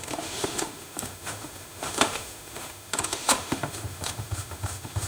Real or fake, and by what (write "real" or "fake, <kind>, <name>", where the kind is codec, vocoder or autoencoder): fake, autoencoder, DAC-VAE